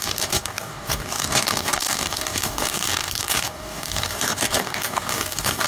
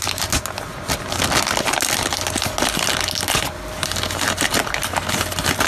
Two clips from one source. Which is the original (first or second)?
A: second